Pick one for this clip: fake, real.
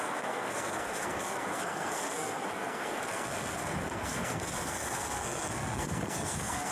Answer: fake